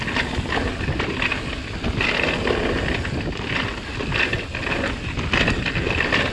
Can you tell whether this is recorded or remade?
recorded